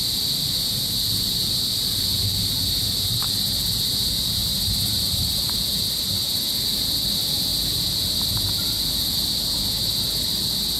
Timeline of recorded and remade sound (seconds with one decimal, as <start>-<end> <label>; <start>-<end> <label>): 0.0-4.4 recorded; 4.4-5.5 remade; 5.5-10.8 recorded